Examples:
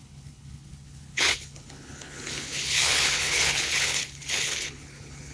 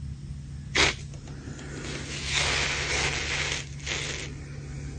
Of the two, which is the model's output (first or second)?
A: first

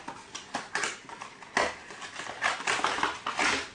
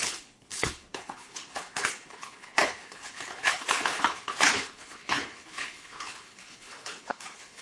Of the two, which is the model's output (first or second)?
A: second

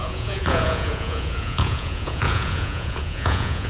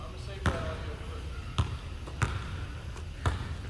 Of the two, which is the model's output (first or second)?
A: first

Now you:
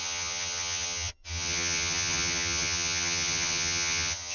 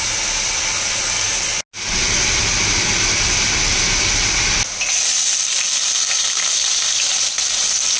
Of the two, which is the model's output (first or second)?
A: first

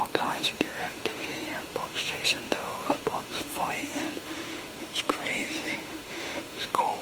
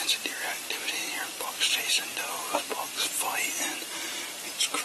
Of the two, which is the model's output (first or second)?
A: first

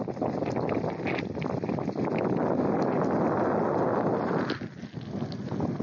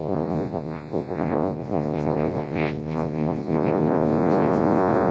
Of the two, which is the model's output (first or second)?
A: second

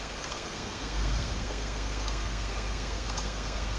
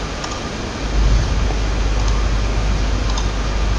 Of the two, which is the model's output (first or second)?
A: first